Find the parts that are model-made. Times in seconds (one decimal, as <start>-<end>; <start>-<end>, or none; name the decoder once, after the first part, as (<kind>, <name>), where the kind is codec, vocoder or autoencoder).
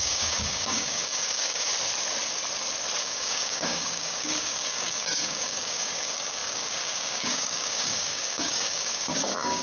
0.0-1.7 (codec, DAC); 3.0-9.6